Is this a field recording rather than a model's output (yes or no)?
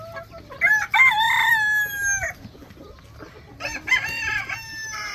yes